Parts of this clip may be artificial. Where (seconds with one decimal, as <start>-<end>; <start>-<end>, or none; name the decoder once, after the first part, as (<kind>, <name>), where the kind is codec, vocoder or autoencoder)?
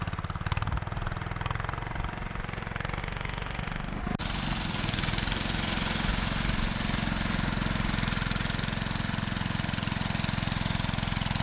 3.0-4.0 (autoencoder, DAC-VAE)